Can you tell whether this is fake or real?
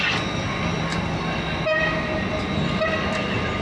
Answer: real